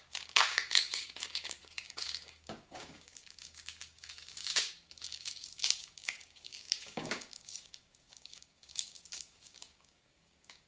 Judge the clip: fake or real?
fake